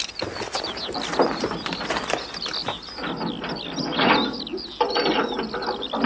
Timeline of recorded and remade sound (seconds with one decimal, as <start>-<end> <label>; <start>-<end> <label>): 0.0-6.1 recorded